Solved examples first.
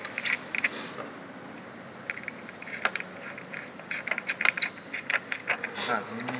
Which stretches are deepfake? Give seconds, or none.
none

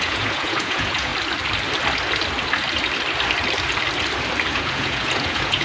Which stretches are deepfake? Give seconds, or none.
0.0-1.1 (vocoder, Vocos); 4.5-5.6

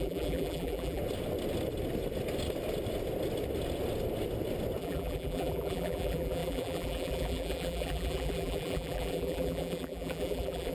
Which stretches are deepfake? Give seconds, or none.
0.0-1.0 (vocoder, BigVGAN v2); 4.8-10.7